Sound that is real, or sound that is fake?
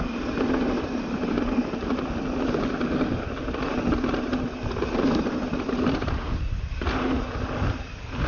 real